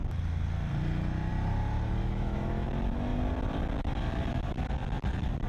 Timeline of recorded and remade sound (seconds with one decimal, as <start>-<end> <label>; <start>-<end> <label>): 0.0-2.0 recorded; 2.0-2.7 remade; 2.7-5.5 recorded